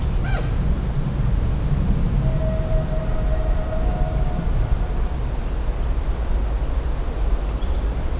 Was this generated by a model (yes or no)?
no